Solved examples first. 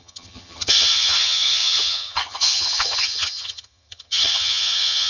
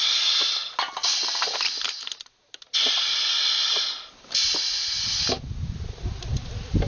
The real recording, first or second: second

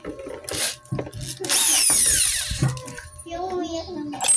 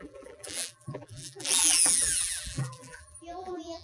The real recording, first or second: first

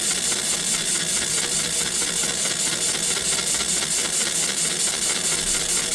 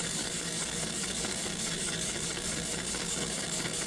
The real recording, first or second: first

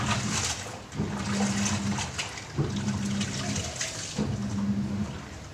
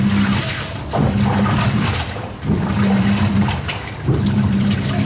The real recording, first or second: first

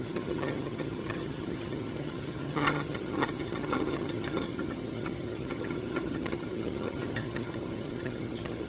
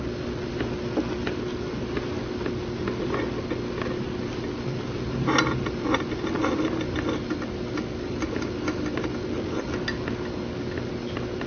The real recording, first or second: second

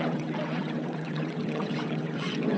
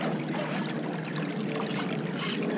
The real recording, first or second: second